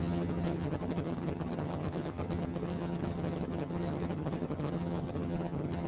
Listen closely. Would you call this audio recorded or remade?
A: remade